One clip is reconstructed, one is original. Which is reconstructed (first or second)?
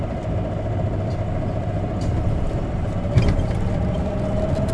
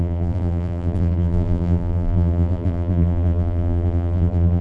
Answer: second